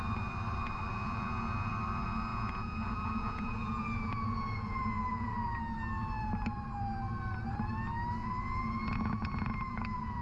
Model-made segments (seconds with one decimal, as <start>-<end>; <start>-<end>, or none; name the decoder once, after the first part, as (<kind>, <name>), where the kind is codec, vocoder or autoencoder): 0.9-1.7 (vocoder, Vocos); 2.3-5.6; 8.2-10.2